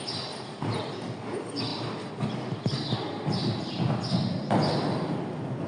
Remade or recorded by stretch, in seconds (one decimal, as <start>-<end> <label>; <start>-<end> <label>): 0.0-5.7 recorded